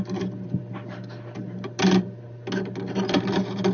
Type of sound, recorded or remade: recorded